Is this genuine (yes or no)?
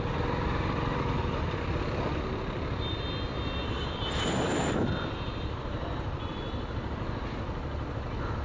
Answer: yes